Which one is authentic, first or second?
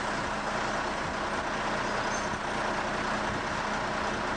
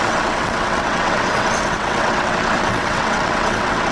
first